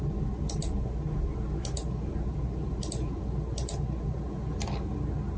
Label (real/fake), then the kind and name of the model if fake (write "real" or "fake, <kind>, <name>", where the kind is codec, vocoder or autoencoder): real